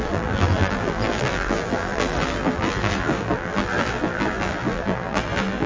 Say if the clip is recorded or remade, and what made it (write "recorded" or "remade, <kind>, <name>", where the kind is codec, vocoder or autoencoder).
remade, vocoder, BigVGAN v2